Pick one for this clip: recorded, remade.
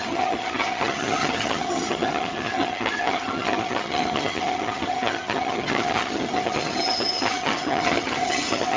remade